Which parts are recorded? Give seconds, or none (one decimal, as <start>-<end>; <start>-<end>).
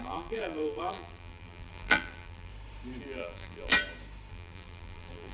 2.5-3.0; 3.7-4.3